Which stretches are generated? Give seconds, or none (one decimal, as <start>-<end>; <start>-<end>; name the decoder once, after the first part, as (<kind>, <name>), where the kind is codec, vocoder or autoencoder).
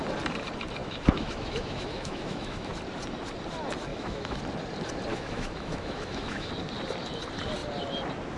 0.8-2.7 (autoencoder, DAC-VAE); 3.9-4.4; 5.1-6.5